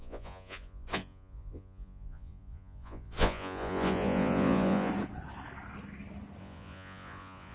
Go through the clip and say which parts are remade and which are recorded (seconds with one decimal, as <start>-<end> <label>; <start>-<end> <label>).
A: 0.0-4.9 remade; 4.9-6.4 recorded; 6.4-7.5 remade